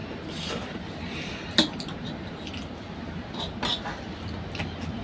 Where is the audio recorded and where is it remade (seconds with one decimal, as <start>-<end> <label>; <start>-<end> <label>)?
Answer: 0.0-5.0 recorded